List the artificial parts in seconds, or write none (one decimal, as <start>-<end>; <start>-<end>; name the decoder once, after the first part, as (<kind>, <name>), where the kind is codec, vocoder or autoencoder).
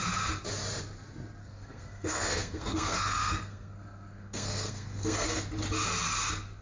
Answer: 1.4-5.4 (codec, SNAC)